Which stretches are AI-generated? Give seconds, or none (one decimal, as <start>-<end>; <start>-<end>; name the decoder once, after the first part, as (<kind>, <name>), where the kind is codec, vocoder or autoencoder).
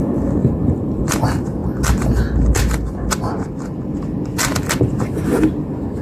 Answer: 0.4-1.0 (vocoder, BigVGAN v2)